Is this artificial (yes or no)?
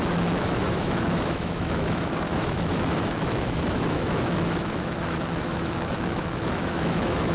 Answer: yes